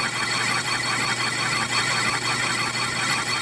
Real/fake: real